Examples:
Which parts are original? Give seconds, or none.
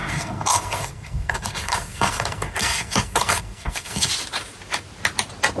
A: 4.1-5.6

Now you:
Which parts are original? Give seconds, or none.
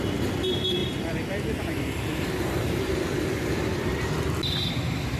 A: 0.0-0.8; 3.9-5.2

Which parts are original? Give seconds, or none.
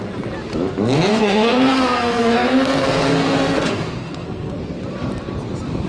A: 0.0-1.1; 4.6-5.9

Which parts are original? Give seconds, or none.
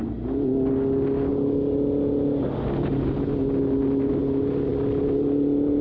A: 0.0-5.8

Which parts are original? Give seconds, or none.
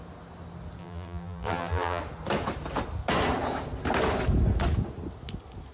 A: 0.0-0.8; 2.0-5.7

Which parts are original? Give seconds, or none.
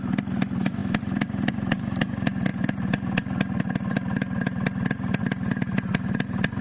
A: 0.0-6.6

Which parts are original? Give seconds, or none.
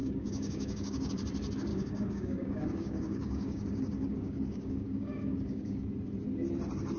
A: 1.1-1.7; 5.9-7.0